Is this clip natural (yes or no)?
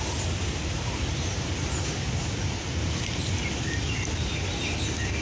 yes